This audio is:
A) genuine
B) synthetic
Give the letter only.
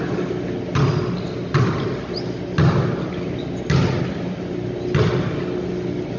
A